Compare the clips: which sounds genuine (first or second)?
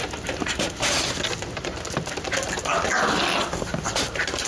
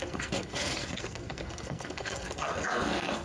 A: first